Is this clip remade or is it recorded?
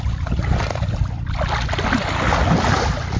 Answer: recorded